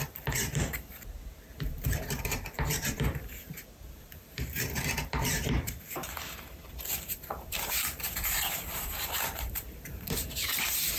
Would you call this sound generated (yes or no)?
yes